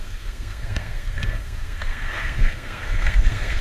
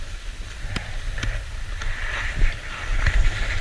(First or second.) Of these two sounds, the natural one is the second